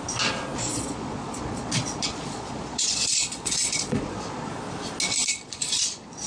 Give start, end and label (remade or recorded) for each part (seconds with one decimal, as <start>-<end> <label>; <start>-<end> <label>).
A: 0.0-0.7 recorded; 0.7-4.5 remade; 4.5-5.2 recorded; 5.2-6.3 remade